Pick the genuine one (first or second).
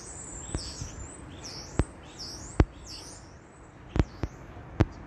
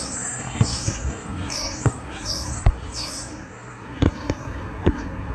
first